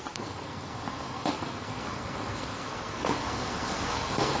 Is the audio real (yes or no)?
no